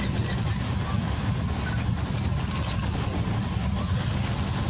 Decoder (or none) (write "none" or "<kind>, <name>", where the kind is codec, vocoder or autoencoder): none